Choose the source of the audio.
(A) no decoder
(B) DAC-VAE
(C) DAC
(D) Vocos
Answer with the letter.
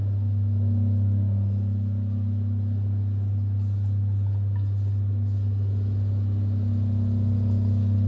A